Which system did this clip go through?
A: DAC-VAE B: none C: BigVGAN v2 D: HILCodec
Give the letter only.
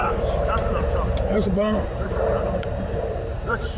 C